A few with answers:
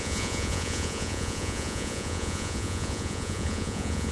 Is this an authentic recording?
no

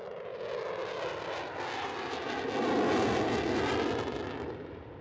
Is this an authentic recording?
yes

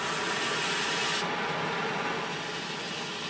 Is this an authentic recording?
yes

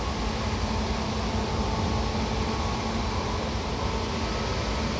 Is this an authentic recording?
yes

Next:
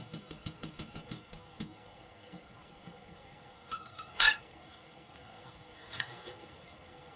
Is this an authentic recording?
no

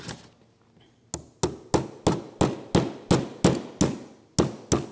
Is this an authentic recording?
yes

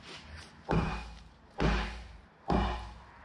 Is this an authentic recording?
no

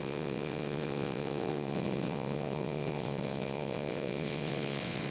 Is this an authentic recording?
no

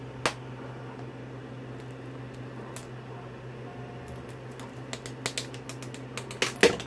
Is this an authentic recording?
yes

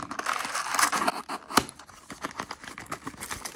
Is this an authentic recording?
yes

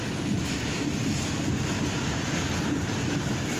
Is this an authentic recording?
yes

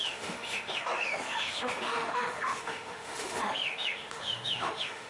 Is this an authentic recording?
no